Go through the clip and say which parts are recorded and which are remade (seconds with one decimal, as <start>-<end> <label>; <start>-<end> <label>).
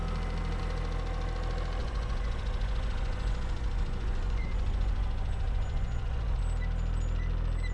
0.0-1.8 recorded; 1.8-6.4 remade; 6.4-7.7 recorded